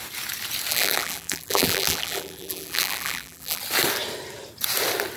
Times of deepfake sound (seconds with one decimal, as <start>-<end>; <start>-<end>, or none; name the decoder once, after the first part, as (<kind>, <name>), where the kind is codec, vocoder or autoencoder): 0.7-3.6 (vocoder, BigVGAN v2)